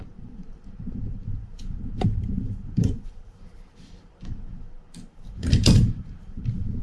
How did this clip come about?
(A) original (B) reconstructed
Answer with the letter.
B